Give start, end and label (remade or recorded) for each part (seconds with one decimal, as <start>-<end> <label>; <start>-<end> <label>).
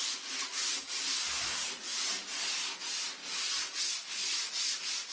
0.0-0.6 remade; 0.6-1.4 recorded; 1.4-1.9 remade; 1.9-2.8 recorded; 2.8-3.2 remade; 3.2-4.5 recorded; 4.5-5.1 remade